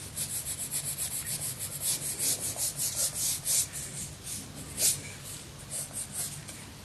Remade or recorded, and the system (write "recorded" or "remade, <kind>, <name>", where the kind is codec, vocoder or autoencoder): recorded